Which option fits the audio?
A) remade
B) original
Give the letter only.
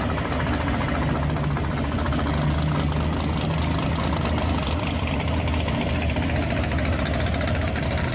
B